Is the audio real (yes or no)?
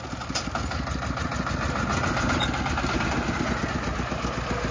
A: yes